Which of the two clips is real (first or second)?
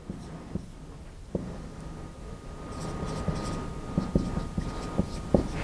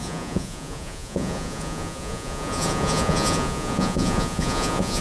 first